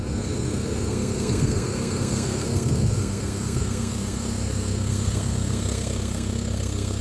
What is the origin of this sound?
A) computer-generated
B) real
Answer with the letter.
A